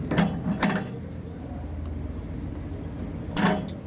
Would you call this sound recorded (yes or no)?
yes